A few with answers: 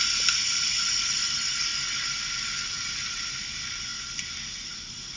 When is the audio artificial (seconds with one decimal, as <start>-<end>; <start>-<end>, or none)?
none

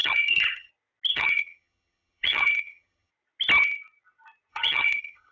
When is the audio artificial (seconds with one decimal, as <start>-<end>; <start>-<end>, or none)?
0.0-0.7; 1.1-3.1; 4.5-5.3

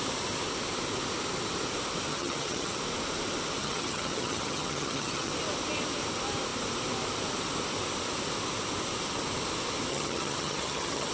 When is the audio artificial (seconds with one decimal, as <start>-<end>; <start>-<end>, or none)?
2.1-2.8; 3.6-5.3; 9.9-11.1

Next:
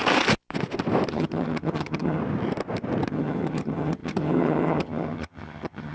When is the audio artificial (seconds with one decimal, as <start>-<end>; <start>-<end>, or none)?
1.1-2.2; 3.1-5.9